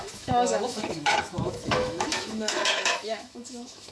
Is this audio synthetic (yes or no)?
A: yes